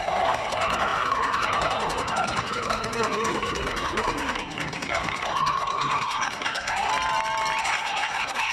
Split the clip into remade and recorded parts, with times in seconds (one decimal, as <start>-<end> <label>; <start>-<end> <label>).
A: 0.0-6.9 remade; 6.9-7.6 recorded; 7.6-8.5 remade